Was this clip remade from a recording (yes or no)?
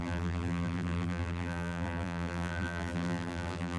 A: yes